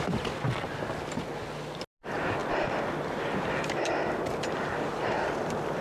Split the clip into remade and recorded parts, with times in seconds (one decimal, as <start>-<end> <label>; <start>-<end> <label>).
0.0-2.4 recorded; 2.4-5.8 remade